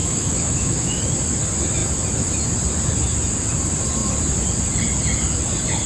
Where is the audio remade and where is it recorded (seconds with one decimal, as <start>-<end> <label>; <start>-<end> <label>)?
0.0-1.0 remade; 1.0-5.9 recorded